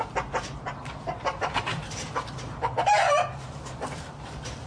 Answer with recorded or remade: remade